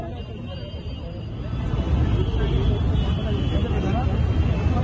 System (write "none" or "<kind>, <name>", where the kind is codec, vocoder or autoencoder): none